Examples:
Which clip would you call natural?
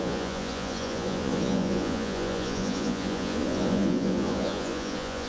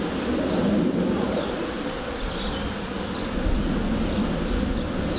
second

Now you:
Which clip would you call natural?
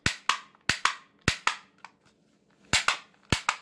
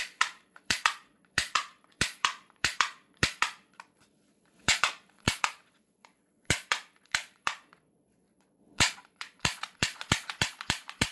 first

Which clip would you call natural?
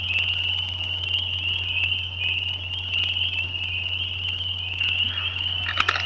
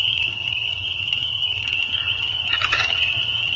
first